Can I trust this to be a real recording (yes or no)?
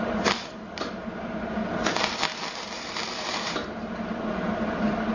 no